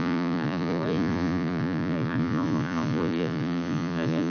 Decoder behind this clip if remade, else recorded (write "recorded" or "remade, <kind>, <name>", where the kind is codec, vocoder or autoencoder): remade, vocoder, Vocos